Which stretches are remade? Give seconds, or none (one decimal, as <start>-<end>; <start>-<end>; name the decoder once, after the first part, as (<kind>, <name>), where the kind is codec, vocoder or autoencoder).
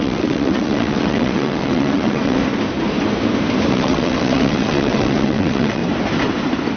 0.0-2.4 (vocoder, WaveNeXt); 3.7-5.8